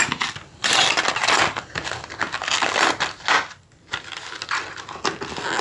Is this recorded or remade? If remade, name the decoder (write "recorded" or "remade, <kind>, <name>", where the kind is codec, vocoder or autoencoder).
recorded